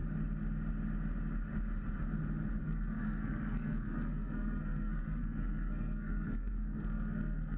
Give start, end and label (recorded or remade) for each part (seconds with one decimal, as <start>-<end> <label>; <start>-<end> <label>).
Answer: 0.0-2.6 recorded; 2.6-7.6 remade